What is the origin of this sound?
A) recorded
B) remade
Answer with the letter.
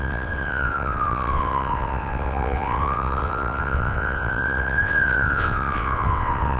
B